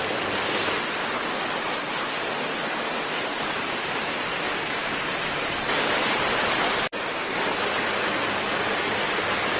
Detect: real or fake real